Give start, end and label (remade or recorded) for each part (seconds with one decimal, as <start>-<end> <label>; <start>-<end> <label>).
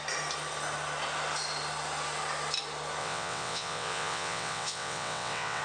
0.0-3.0 recorded; 3.0-5.6 remade